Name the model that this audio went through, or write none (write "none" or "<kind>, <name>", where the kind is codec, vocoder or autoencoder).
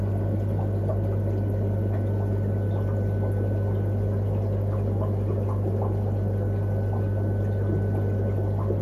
none